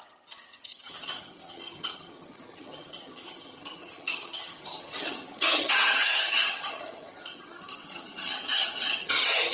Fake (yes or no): yes